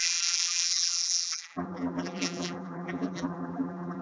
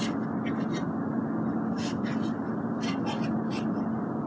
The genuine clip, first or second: second